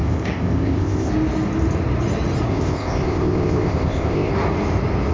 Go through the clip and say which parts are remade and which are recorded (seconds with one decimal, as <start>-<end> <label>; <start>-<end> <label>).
0.0-1.1 remade; 1.1-2.5 recorded; 2.5-4.3 remade; 4.3-5.1 recorded